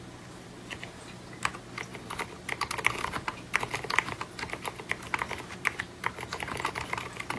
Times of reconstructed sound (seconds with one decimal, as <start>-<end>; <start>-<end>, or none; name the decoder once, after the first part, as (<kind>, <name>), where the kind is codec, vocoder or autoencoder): none